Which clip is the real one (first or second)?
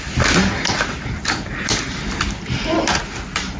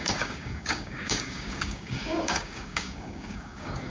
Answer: first